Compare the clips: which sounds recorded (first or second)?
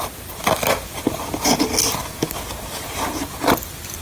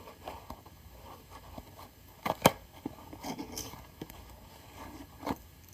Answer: first